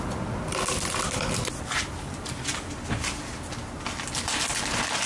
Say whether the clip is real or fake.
real